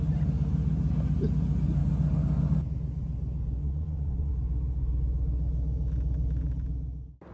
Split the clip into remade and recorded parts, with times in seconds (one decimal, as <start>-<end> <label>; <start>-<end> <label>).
0.0-3.6 recorded; 3.6-4.3 remade; 4.3-7.3 recorded